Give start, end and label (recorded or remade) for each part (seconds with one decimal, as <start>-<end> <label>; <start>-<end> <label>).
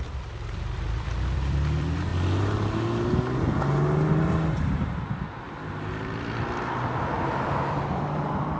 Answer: 0.0-2.1 remade; 2.1-5.9 recorded; 5.9-8.6 remade